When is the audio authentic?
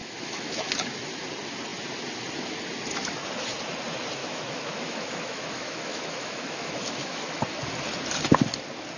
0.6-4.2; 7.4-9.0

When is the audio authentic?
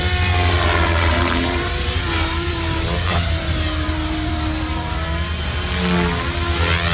0.0-1.1; 4.9-6.9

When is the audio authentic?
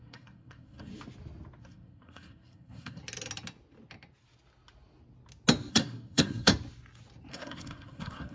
0.9-1.6; 3.0-5.7; 6.5-7.3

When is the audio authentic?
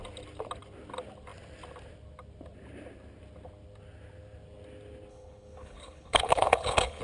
0.0-5.1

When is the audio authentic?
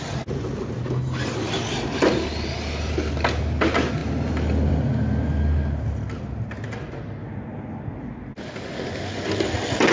0.0-9.9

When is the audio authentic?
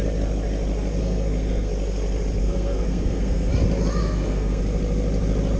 0.0-1.0; 1.7-2.4; 3.5-4.0; 4.6-5.6